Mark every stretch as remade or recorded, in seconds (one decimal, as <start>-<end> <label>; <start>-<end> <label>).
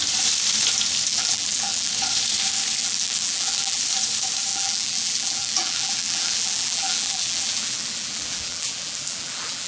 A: 0.0-1.1 recorded; 1.1-1.9 remade; 1.9-2.8 recorded; 2.8-3.8 remade; 3.8-4.5 recorded; 4.5-9.7 remade